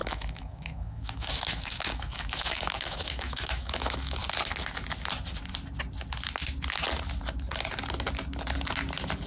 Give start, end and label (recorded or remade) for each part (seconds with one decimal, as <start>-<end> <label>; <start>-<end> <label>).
0.0-4.2 remade; 4.2-9.3 recorded